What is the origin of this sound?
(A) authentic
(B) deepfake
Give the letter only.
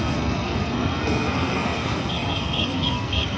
B